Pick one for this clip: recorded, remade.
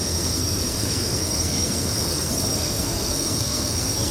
remade